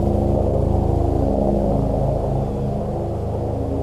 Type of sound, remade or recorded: recorded